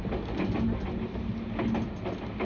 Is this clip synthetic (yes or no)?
no